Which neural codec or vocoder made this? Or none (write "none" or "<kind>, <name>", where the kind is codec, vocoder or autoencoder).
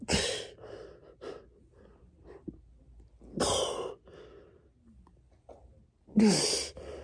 none